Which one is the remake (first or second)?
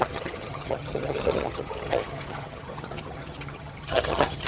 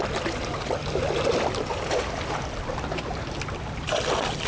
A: first